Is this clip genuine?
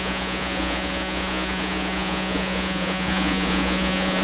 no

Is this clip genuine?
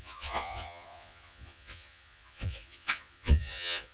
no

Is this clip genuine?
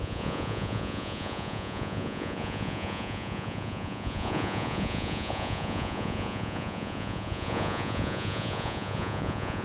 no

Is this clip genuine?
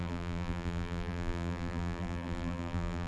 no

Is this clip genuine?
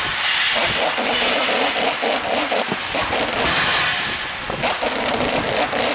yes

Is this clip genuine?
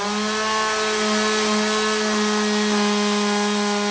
yes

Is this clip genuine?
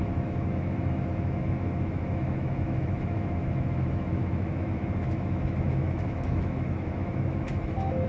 no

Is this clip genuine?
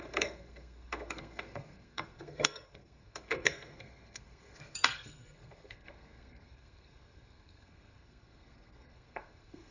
no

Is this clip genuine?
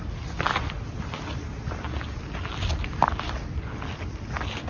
yes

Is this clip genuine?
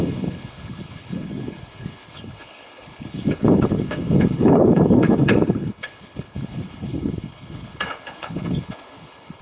no